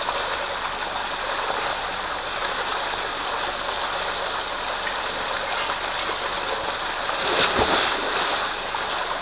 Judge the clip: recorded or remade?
recorded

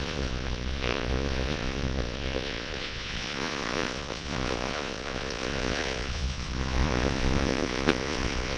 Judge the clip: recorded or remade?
remade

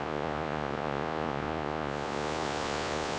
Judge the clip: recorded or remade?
remade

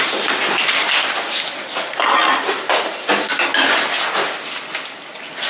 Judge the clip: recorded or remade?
recorded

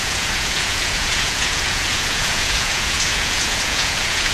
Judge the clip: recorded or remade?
remade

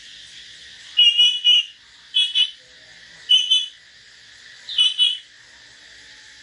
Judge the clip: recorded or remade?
recorded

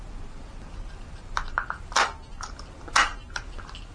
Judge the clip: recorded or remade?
recorded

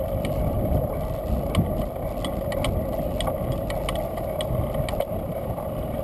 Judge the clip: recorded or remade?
recorded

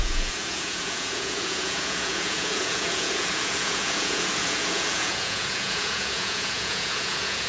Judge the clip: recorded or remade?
remade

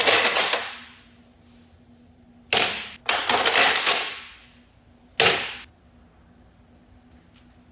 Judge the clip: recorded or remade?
recorded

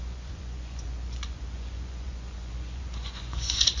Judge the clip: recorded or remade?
remade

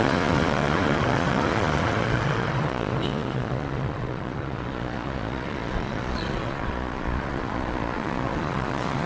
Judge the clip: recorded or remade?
remade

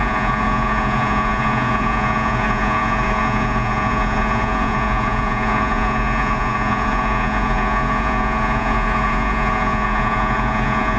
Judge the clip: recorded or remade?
remade